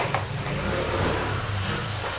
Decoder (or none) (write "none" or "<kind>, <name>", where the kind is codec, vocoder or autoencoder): vocoder, BigVGAN v2